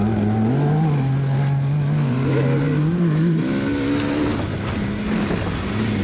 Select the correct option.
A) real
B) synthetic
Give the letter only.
A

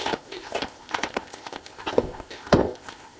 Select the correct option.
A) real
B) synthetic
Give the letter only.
B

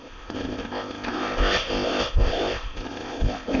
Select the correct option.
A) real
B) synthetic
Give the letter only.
B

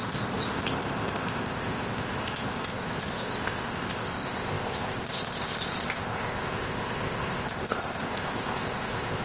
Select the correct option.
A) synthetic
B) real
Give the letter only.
A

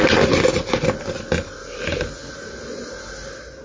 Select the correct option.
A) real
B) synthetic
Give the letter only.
A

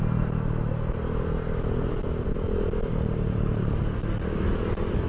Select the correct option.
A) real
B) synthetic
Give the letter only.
A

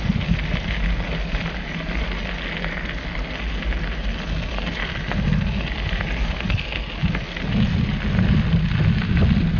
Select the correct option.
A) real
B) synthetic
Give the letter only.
A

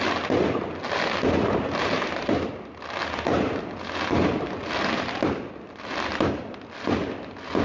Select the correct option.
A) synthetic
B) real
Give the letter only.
B